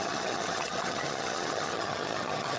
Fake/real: fake